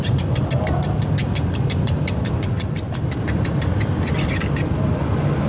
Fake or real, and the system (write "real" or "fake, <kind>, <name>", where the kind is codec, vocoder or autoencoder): real